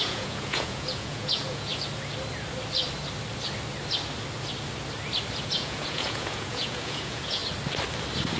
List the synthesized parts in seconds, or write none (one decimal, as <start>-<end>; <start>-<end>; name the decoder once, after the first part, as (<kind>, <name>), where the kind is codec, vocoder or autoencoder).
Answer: 0.0-1.7 (vocoder, Vocos); 5.4-7.4